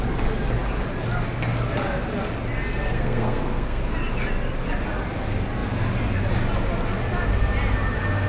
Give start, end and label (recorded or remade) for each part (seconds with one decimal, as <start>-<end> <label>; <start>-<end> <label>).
0.0-2.9 recorded; 2.9-3.8 remade; 3.8-8.3 recorded